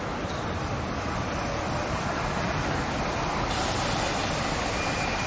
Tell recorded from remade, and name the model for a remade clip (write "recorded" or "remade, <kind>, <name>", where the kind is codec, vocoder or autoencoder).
remade, vocoder, BigVGAN v2